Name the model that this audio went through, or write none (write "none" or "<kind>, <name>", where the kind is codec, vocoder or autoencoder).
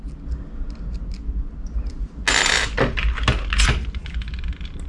none